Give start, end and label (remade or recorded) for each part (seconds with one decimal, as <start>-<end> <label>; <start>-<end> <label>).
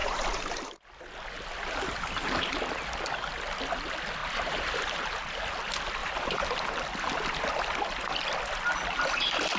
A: 0.0-0.6 remade; 0.6-4.2 recorded; 4.2-5.4 remade; 5.4-6.0 recorded; 6.0-6.6 remade; 6.6-9.6 recorded